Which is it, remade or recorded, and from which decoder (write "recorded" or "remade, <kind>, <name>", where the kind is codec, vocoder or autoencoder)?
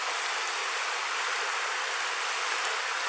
recorded